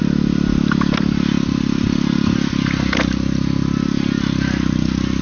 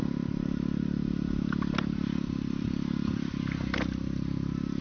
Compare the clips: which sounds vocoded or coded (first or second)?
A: second